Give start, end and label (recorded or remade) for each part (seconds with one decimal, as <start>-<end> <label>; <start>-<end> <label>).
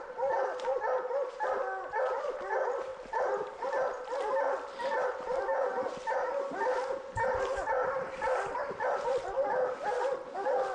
0.0-10.7 recorded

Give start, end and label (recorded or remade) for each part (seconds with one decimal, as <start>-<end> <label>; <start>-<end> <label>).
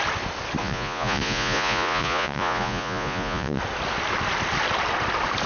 0.0-0.6 recorded; 0.6-3.6 remade; 3.6-5.5 recorded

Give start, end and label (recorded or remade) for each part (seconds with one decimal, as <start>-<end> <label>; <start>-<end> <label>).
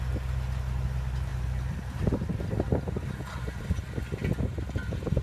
0.0-5.2 recorded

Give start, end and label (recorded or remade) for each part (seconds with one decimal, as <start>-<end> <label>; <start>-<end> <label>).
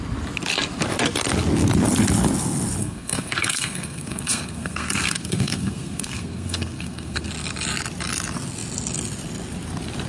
0.0-2.8 recorded; 2.8-7.3 remade; 7.3-10.1 recorded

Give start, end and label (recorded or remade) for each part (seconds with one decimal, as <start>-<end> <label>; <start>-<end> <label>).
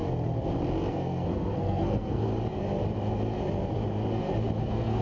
0.0-0.9 recorded; 0.9-2.3 remade; 2.3-4.6 recorded; 4.6-5.0 remade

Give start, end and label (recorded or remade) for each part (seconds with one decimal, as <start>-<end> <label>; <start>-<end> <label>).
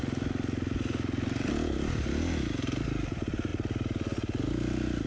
0.0-5.1 recorded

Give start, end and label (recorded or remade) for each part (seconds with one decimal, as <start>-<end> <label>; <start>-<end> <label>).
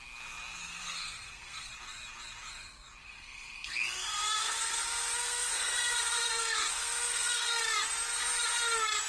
0.0-0.6 recorded; 0.6-1.7 remade; 1.7-3.0 recorded; 3.0-7.6 remade; 7.6-9.1 recorded